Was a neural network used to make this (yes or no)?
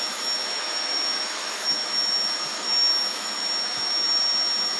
yes